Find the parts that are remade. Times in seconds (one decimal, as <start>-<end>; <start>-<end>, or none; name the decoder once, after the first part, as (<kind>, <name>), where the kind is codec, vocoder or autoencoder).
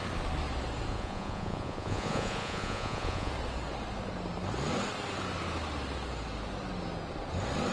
0.9-3.3 (vocoder, Vocos)